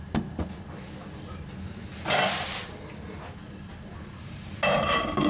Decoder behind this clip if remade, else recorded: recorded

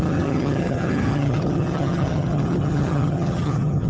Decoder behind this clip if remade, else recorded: remade, vocoder, HiFi-GAN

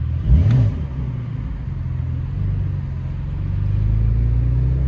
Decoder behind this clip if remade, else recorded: recorded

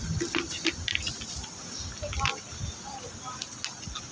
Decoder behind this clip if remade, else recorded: recorded